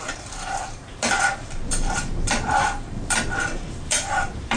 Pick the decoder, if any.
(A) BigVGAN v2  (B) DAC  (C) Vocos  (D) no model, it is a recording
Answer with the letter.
A